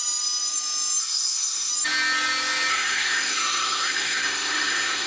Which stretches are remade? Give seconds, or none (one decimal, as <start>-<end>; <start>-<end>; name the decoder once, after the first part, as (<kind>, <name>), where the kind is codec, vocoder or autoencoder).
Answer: 1.0-1.7 (codec, SNAC); 2.7-5.1